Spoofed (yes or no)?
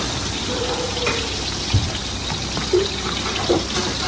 no